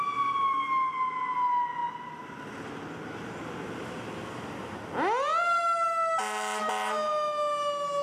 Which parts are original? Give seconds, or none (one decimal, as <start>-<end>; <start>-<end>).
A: 0.0-8.0